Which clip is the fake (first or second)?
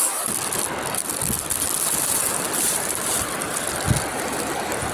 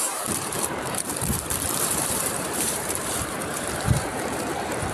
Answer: second